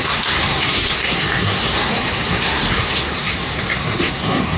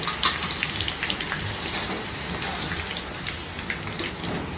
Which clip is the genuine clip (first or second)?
second